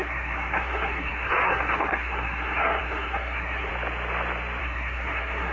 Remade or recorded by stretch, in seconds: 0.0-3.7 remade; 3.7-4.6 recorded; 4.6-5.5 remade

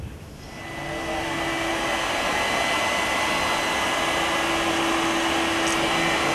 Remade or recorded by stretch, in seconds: 0.0-6.3 recorded